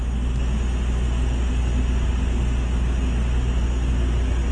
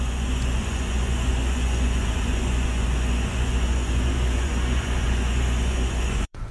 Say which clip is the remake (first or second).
second